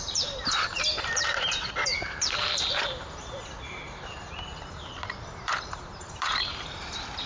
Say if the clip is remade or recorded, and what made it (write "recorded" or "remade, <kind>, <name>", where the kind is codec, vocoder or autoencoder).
remade, vocoder, BigVGAN v2